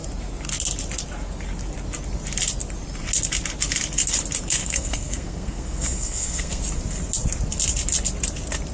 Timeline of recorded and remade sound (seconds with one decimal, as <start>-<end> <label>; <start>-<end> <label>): 0.0-4.6 recorded; 4.6-6.6 remade; 6.6-8.7 recorded